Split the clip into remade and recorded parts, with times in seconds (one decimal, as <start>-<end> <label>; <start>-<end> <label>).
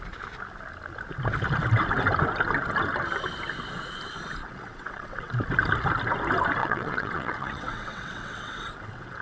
0.0-4.4 recorded; 4.4-5.3 remade; 5.3-6.6 recorded; 6.6-9.2 remade